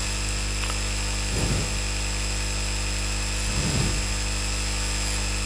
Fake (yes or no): no